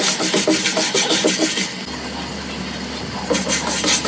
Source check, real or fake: real